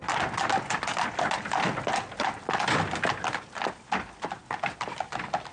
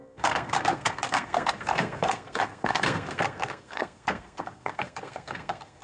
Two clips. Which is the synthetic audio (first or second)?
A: second